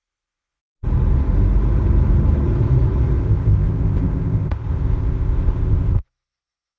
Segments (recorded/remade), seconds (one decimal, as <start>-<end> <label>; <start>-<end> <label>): 0.0-0.6 remade; 0.6-3.2 recorded; 3.2-6.8 remade